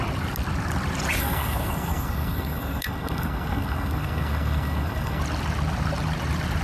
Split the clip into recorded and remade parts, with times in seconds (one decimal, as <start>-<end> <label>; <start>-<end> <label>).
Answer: 0.0-1.2 recorded; 1.2-5.2 remade; 5.2-6.6 recorded